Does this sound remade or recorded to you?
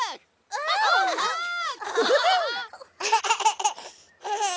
recorded